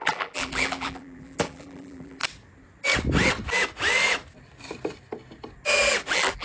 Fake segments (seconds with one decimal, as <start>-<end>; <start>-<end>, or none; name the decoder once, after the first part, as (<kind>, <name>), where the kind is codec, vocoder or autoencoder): 0.0-2.2 (vocoder, BigVGAN v2); 6.0-6.4